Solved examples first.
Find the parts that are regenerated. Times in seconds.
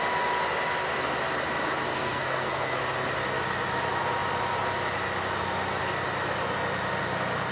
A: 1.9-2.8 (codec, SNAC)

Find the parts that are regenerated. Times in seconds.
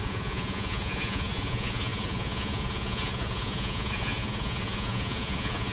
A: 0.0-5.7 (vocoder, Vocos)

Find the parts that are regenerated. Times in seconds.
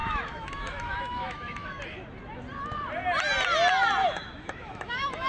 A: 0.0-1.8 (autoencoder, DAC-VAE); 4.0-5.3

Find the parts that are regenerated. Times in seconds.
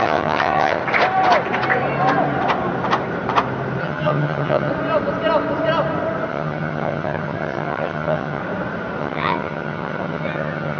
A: 0.0-0.8 (vocoder, HiFi-GAN); 3.8-4.7; 6.3-8.4; 9.0-10.8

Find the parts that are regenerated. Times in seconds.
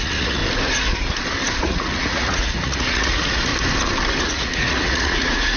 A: 0.0-0.4 (vocoder, Vocos); 1.6-3.5; 4.2-5.6